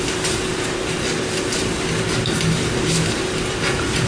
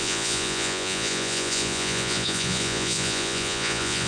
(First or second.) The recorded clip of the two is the first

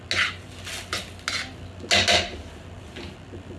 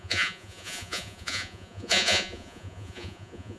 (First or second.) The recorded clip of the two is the first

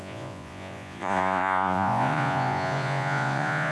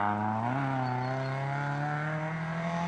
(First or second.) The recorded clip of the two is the second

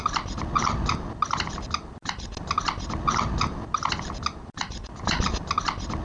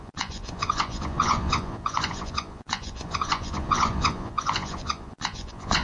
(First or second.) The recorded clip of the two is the first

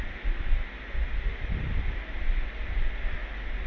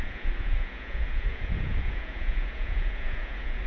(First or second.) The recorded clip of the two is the first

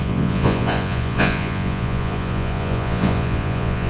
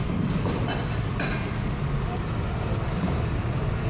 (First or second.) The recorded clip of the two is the second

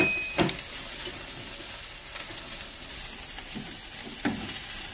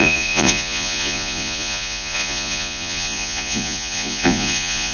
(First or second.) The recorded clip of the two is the first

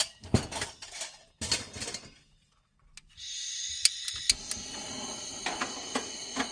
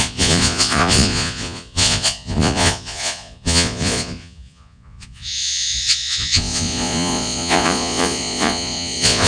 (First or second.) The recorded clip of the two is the first